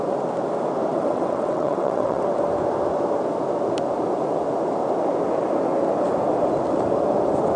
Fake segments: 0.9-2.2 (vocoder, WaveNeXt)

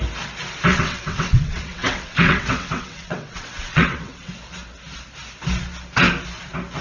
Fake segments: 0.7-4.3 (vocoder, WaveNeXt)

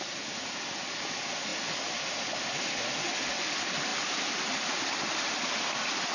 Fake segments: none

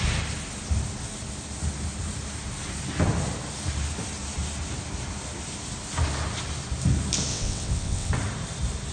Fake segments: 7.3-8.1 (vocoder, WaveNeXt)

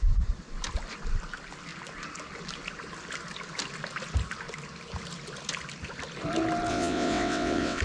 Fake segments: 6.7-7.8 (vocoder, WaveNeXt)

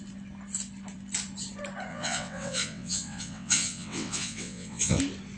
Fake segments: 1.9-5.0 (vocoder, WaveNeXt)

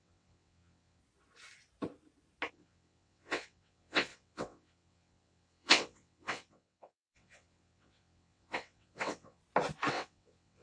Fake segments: 0.0-1.0 (vocoder, WaveNeXt); 2.5-9.4; 9.9-10.6